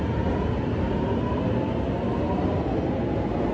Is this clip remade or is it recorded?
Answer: recorded